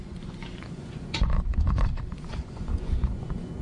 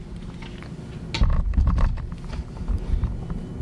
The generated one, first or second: first